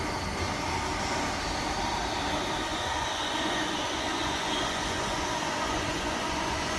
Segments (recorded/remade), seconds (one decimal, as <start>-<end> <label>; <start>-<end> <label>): 0.0-2.7 recorded; 2.7-6.8 remade